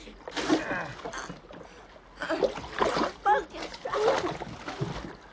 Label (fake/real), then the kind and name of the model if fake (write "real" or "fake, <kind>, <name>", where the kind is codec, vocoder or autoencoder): real